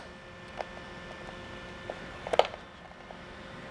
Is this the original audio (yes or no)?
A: yes